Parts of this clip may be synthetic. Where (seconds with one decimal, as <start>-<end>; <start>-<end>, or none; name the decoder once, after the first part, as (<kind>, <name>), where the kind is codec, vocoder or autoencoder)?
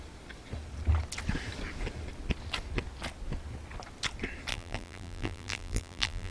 4.5-6.3 (vocoder, BigVGAN v2)